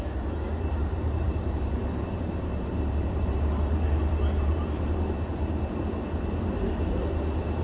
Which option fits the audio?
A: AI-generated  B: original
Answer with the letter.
A